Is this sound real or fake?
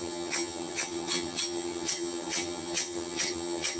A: fake